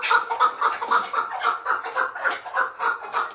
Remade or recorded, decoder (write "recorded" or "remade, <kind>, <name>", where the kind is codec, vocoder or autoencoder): recorded